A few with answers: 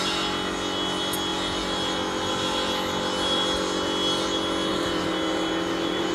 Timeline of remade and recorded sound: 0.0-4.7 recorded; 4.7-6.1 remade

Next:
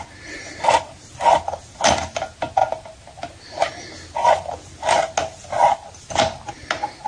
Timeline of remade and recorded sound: 0.0-7.1 recorded

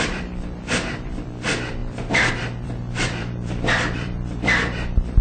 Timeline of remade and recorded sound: 0.0-5.2 remade